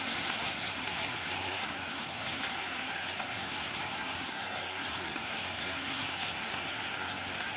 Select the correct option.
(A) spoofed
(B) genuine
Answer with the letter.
A